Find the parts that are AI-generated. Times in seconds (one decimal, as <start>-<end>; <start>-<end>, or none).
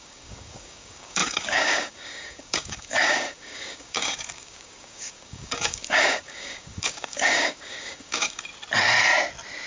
0.0-8.5